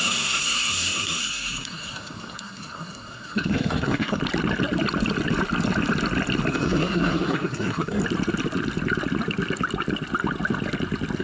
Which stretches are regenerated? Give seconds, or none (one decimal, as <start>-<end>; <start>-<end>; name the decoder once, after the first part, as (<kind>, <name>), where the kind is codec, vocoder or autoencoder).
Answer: 0.0-4.2 (codec, SNAC); 6.5-8.0